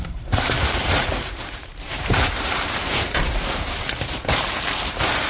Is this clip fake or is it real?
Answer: fake